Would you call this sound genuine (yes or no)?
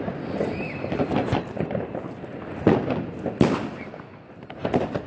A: yes